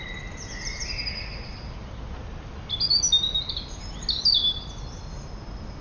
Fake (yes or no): no